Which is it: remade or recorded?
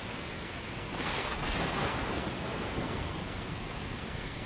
remade